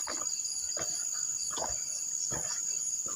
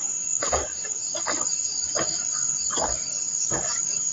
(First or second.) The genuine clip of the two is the first